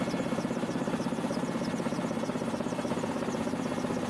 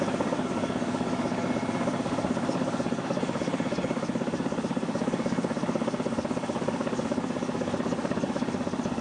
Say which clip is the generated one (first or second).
second